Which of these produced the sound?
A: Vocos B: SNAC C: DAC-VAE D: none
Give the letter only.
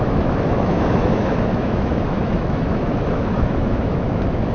C